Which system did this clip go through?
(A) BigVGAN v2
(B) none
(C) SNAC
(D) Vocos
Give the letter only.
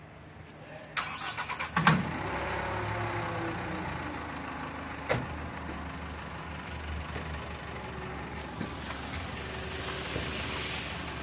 B